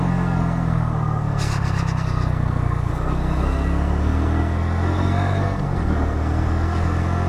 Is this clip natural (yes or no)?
no